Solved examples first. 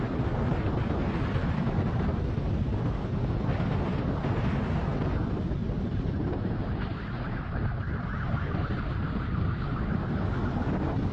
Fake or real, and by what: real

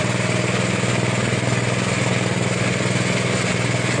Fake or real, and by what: real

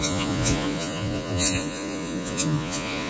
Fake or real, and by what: fake, vocoder, Vocos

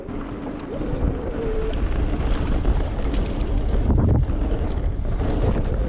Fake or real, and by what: real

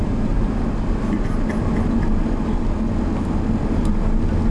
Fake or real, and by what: real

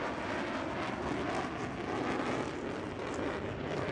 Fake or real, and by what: real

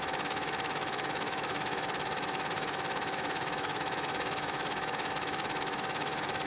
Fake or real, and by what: fake, autoencoder, DAC-VAE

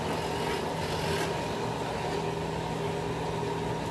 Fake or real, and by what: real